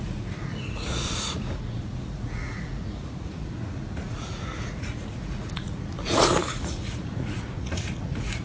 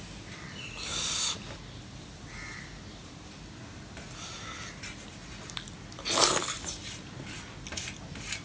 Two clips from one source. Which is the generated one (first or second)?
first